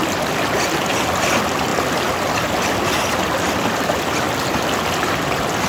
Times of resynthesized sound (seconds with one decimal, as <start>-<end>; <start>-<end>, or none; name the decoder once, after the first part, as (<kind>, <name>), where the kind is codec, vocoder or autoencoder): none